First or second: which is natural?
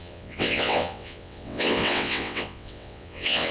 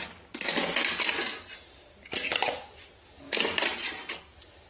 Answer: second